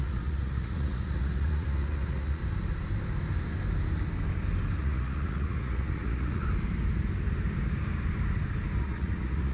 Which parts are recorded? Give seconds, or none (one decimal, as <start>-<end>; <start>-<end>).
2.4-4.8; 6.4-8.8